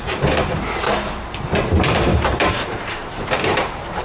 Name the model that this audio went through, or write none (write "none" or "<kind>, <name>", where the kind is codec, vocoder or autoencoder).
vocoder, BigVGAN v2